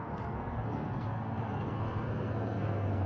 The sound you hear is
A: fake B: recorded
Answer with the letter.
A